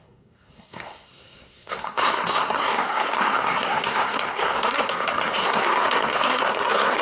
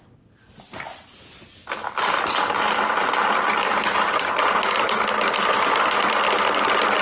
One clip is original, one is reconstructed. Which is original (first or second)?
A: second